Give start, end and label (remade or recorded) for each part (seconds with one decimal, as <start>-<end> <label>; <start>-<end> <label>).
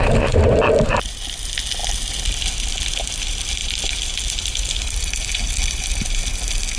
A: 0.0-3.6 recorded; 3.6-6.2 remade; 6.2-6.8 recorded